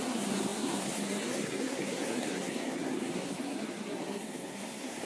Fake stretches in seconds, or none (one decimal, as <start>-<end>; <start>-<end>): 0.0-5.1